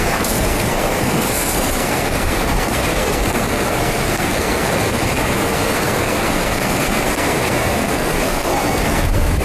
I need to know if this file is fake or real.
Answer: fake